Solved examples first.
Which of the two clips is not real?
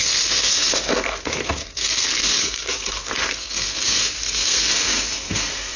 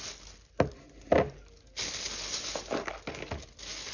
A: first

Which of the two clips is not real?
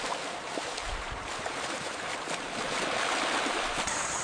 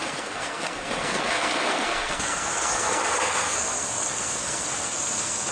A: second